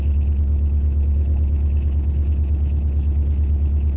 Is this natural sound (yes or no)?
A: yes